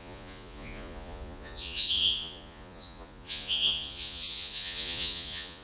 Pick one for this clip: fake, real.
fake